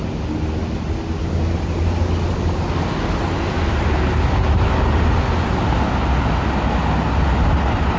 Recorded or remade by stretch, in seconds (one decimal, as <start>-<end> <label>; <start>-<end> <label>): 0.0-8.0 recorded